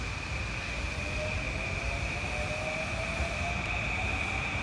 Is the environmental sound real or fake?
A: real